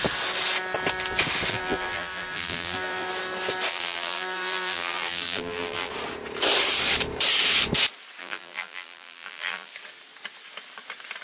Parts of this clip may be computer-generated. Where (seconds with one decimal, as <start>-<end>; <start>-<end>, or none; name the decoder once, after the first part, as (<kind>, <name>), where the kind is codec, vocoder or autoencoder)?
1.5-3.1 (vocoder, BigVGAN v2); 3.7-5.9; 8.2-9.7